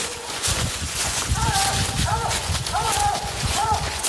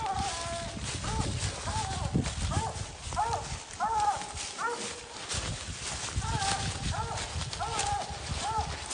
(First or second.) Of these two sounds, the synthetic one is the first